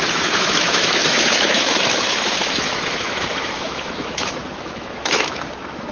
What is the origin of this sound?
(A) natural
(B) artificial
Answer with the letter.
B